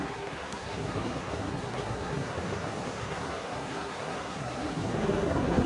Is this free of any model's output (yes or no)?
no